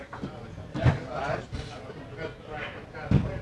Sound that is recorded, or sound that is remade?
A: recorded